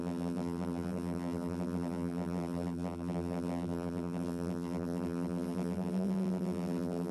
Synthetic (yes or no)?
yes